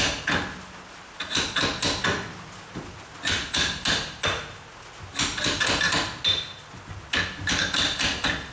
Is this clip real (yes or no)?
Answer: yes